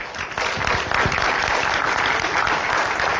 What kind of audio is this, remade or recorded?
recorded